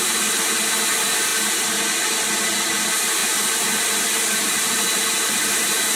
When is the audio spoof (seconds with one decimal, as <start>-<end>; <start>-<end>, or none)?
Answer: none